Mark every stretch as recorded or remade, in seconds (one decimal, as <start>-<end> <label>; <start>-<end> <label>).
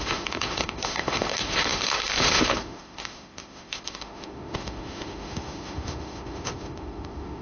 0.0-7.4 remade